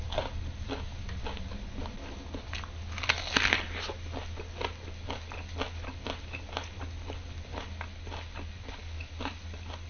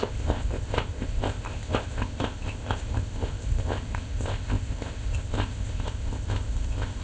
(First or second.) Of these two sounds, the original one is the first